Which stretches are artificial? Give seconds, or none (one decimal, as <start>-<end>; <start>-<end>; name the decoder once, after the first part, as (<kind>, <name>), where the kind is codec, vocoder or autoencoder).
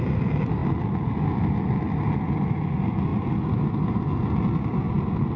none